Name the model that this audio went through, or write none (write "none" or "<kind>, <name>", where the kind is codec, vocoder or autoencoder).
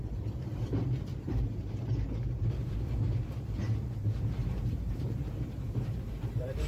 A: vocoder, BigVGAN v2